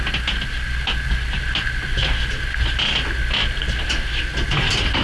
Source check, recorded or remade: recorded